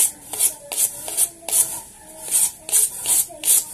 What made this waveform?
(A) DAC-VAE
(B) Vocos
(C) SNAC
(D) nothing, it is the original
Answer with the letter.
D